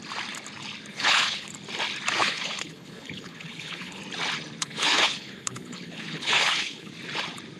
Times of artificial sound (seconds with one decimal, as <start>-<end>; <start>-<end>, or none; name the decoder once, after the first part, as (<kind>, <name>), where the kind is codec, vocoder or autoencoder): 0.9-1.5 (codec, HILCodec); 2.2-4.0; 4.6-6.9